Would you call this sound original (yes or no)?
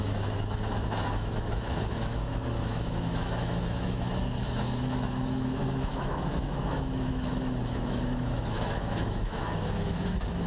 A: no